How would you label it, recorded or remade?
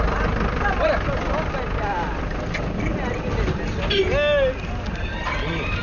recorded